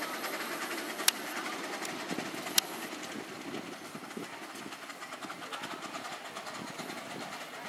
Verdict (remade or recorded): recorded